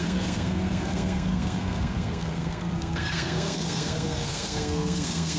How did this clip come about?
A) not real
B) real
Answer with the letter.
A